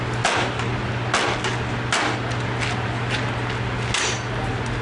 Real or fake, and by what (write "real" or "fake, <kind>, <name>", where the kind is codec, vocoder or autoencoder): real